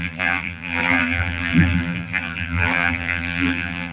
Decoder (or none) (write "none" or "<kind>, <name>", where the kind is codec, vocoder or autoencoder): vocoder, BigVGAN v2